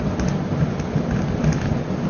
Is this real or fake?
real